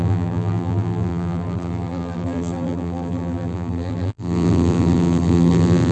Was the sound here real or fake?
fake